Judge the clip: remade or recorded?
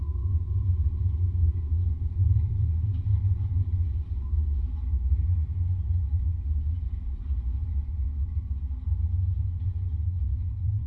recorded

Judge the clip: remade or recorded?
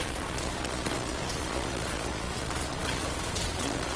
remade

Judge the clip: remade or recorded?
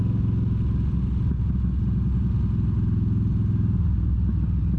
recorded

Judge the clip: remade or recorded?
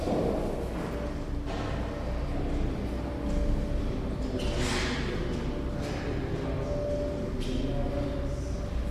recorded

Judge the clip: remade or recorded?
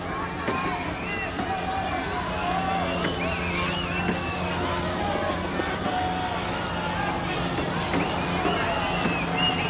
recorded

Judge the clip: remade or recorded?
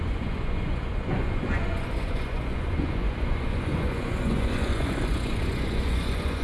remade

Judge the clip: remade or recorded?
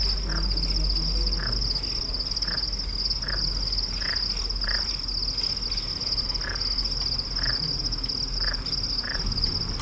recorded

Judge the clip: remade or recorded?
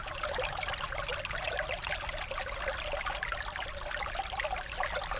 recorded